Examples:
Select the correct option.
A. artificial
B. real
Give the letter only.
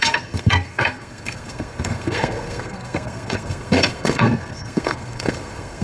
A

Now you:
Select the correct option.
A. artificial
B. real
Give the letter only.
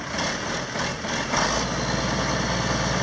B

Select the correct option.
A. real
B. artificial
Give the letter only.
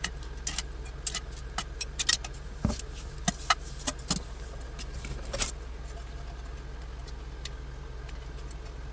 A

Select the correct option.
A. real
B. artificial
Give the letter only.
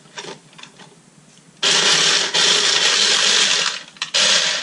A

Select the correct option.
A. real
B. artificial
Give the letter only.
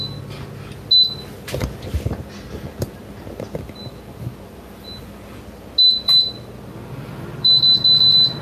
A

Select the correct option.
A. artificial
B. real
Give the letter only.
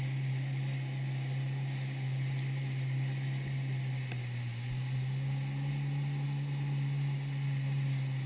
B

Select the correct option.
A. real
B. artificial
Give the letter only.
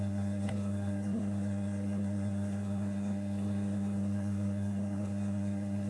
B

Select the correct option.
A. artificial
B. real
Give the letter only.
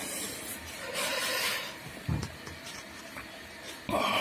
B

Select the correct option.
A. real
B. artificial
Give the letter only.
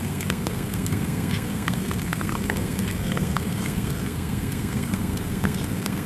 B